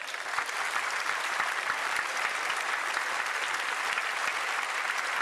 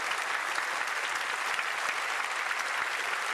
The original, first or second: second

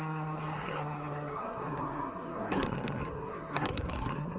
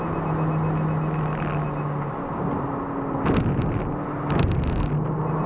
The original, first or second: second